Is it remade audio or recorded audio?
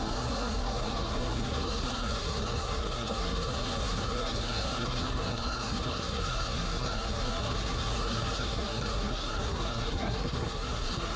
remade